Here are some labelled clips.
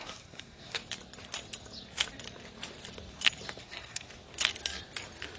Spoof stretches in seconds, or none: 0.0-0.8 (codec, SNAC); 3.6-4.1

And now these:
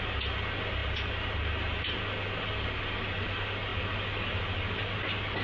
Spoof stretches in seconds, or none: none